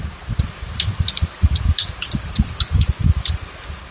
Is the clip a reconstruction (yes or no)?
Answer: no